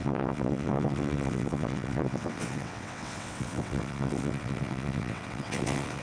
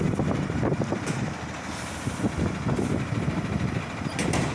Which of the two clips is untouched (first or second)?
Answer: second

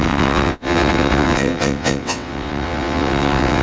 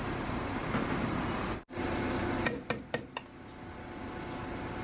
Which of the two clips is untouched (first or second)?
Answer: second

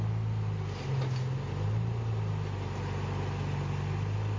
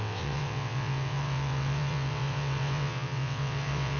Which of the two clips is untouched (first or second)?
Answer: first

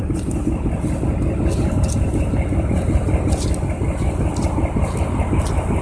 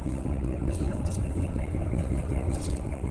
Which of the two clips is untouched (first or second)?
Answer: first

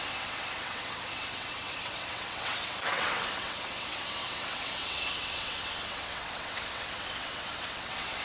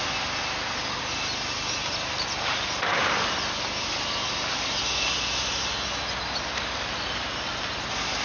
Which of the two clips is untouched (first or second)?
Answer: second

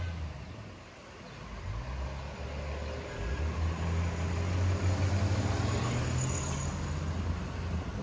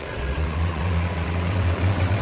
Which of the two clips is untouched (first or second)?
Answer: first